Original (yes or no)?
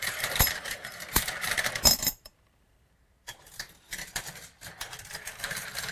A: no